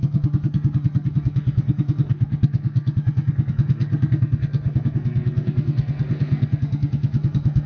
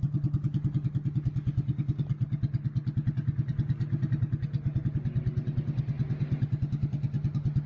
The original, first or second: second